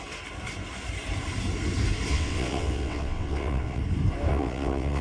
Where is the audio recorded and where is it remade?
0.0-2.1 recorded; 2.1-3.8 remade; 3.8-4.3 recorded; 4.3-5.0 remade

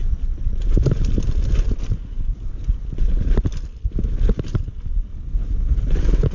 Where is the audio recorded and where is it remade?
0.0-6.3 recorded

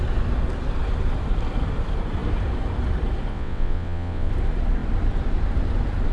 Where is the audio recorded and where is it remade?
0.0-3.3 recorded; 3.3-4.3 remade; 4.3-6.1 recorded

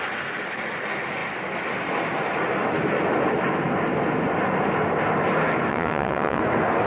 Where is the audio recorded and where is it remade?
0.0-5.7 recorded; 5.7-6.4 remade; 6.4-6.9 recorded

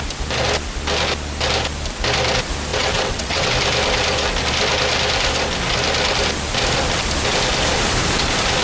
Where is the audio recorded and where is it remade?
0.0-2.7 recorded; 2.7-3.5 remade; 3.5-8.6 recorded

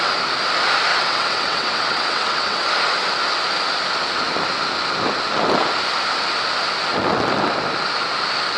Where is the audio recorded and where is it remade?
0.0-0.9 recorded; 0.9-2.7 remade; 2.7-8.6 recorded

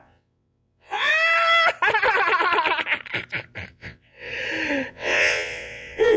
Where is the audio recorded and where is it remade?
0.0-1.1 remade; 1.1-3.7 recorded; 3.7-4.3 remade; 4.3-4.9 recorded; 4.9-6.2 remade